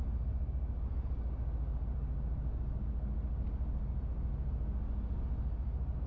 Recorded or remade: recorded